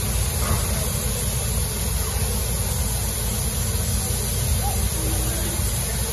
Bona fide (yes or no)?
yes